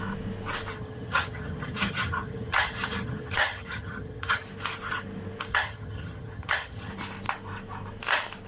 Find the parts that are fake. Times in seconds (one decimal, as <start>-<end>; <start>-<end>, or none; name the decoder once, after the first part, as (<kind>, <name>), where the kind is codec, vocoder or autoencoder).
0.7-4.4 (vocoder, HiFi-GAN); 5.5-6.9